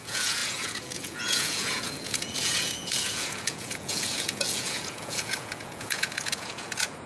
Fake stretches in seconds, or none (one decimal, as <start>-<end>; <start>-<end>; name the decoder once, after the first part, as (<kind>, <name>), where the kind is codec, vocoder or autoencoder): 0.0-7.1 (vocoder, Vocos)